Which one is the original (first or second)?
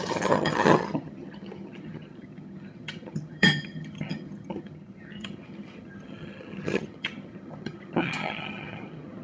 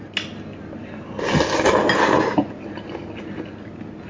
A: second